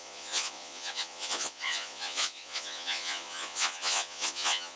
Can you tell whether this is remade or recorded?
remade